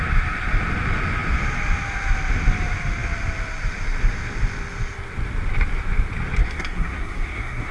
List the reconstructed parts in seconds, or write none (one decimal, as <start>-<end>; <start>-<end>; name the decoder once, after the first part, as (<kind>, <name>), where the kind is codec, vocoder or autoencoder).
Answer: 6.4-7.7 (codec, SNAC)